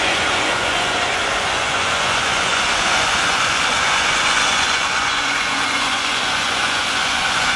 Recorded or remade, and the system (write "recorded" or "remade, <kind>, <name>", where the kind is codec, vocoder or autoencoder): remade, vocoder, Vocos